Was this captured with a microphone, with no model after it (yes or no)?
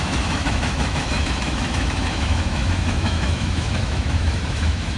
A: no